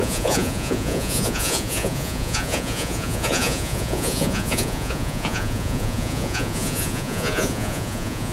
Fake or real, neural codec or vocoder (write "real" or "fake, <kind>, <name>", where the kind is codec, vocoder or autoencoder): fake, vocoder, Vocos